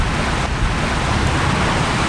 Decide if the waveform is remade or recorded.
recorded